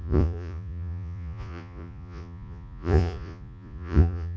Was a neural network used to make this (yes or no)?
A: yes